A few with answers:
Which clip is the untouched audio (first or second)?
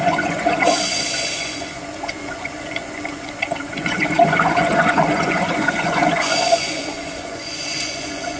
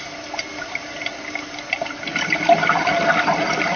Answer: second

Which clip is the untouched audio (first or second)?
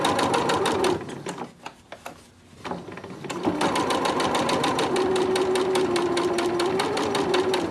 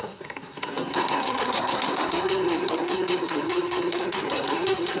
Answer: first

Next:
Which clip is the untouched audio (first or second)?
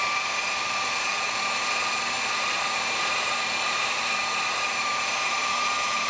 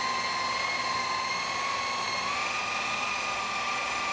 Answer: second